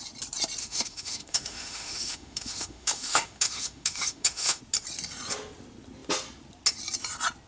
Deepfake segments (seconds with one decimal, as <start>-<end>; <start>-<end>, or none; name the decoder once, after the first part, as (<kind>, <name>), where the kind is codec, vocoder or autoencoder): 0.6-4.6 (autoencoder, DAC-VAE)